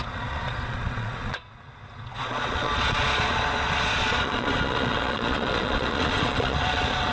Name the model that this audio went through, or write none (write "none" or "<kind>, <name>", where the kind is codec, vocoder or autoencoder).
vocoder, Vocos